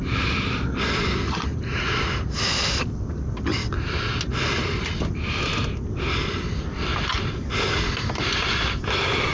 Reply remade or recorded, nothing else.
recorded